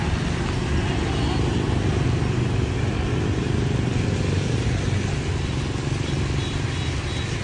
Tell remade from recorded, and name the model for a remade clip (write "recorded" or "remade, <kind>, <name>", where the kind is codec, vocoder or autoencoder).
recorded